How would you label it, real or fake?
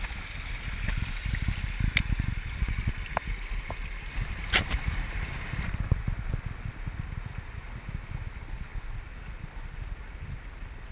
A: real